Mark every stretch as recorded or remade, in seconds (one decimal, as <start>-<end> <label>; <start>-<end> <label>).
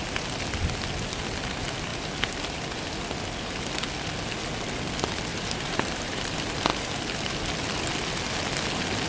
0.0-1.9 recorded; 1.9-2.6 remade; 2.6-5.3 recorded; 5.3-6.2 remade; 6.2-9.1 recorded